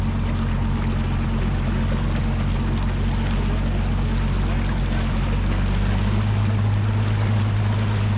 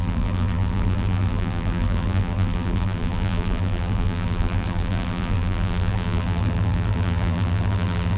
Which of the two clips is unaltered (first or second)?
first